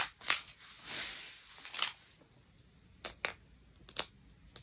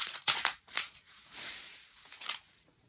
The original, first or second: first